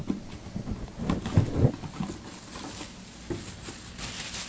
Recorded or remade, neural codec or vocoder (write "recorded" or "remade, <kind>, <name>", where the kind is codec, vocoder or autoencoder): recorded